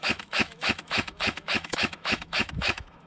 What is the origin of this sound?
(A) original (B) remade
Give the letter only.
B